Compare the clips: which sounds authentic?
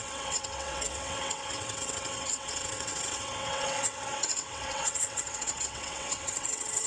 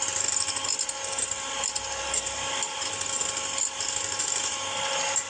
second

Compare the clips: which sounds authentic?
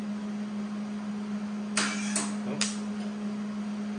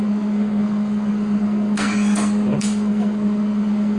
first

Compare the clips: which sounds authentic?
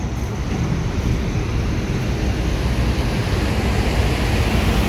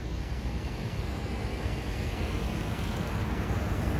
first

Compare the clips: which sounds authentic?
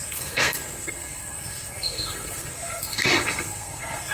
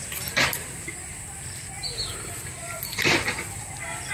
second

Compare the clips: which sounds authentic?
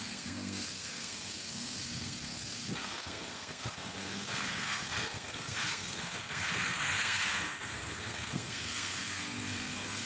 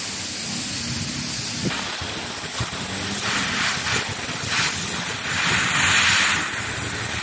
second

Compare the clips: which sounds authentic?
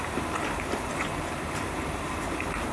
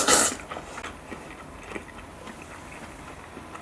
second